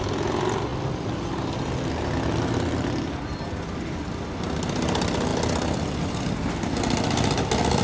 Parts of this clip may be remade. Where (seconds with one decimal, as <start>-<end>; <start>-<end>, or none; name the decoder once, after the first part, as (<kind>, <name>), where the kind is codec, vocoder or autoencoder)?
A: none